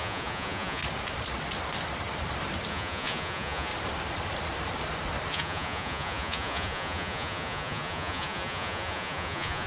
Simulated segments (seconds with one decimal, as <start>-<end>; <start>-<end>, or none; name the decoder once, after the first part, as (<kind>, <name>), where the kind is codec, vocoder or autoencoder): 0.0-0.8 (vocoder, Vocos); 2.7-3.7; 5.3-9.7

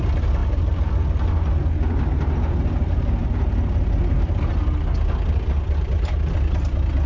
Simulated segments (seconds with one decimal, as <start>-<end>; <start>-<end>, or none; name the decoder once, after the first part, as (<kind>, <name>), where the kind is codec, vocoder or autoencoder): none

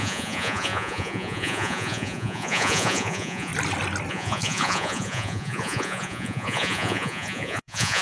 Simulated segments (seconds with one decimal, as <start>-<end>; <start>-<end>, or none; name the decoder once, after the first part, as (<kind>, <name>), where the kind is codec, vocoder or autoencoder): 0.0-3.5 (vocoder, Vocos); 4.1-8.0

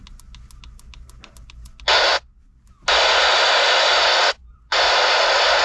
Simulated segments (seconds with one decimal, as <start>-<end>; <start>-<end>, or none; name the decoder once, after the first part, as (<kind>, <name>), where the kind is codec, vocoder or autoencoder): none

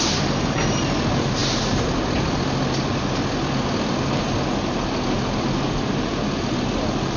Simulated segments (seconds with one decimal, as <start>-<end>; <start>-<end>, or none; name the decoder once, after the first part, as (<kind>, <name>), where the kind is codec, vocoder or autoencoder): none

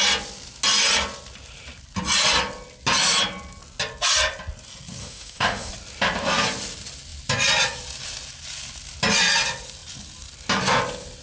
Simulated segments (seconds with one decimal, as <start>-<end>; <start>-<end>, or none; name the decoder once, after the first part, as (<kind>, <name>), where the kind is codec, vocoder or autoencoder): 5.0-5.7 (autoencoder, DAC-VAE)

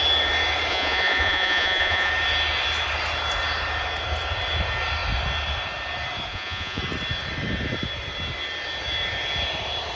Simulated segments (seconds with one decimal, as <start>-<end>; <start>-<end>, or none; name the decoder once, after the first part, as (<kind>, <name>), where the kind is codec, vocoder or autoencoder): 0.7-2.1 (vocoder, Vocos); 6.3-6.8

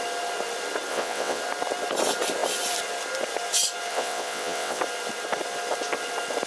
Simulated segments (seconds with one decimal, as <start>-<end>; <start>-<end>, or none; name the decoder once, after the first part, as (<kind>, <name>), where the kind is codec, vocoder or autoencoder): 0.9-1.4 (vocoder, WaveNeXt); 3.9-4.8